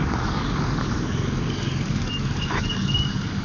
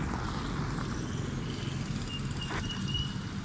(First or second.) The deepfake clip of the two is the first